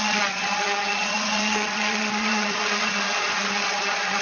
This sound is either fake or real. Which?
fake